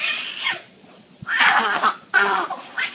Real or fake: fake